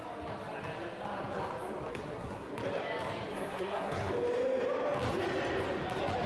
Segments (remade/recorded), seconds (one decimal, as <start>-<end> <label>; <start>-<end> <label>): 0.0-1.9 recorded; 1.9-2.5 remade; 2.5-3.3 recorded; 3.3-4.1 remade; 4.1-6.3 recorded